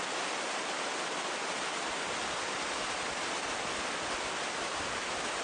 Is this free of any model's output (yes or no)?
yes